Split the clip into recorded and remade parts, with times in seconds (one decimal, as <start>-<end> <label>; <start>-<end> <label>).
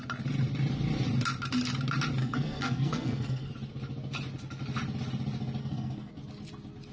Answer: 0.0-2.2 recorded; 2.2-3.5 remade; 3.5-5.6 recorded; 5.6-6.1 remade; 6.1-6.9 recorded